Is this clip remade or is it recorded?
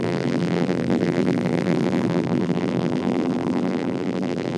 remade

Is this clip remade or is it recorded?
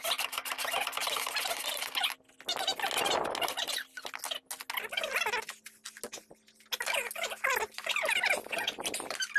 recorded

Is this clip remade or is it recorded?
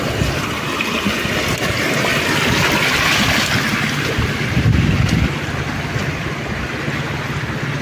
recorded